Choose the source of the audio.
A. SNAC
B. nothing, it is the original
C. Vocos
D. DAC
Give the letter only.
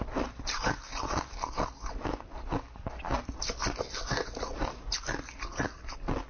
B